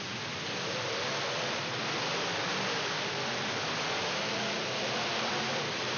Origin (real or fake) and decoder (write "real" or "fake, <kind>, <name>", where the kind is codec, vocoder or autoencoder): fake, vocoder, BigVGAN v2